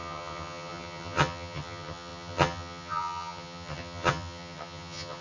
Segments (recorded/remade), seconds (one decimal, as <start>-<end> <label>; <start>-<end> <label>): 0.0-5.2 remade